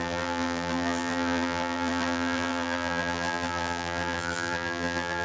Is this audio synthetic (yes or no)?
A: yes